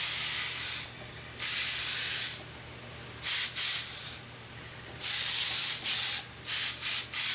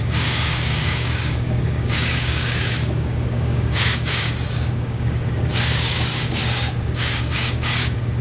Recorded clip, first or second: first